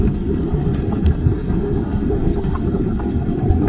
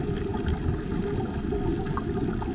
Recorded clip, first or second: second